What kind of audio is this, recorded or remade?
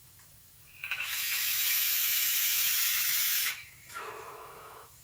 remade